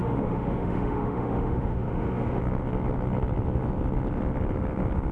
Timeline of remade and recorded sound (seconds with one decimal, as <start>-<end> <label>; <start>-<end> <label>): 0.0-2.4 remade; 2.4-5.1 recorded